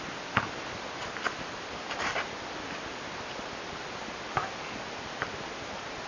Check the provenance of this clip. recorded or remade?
recorded